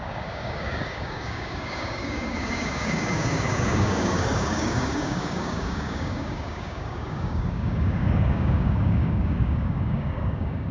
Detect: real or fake fake